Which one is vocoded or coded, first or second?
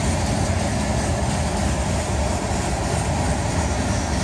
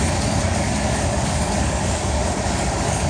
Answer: second